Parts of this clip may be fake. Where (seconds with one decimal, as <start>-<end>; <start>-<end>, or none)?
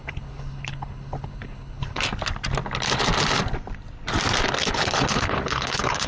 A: 0.0-2.0; 4.6-6.1